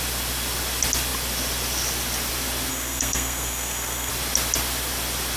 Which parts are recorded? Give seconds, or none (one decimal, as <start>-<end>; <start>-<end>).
0.0-2.7; 4.1-5.4